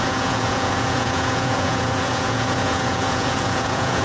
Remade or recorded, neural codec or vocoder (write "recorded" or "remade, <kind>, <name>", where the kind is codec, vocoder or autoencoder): remade, vocoder, Vocos